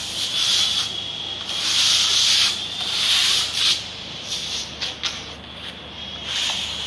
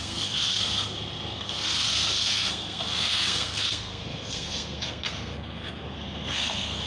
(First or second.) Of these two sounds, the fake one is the second